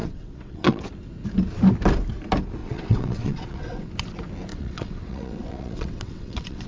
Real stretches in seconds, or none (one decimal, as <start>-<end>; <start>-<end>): 0.8-2.6; 3.9-4.5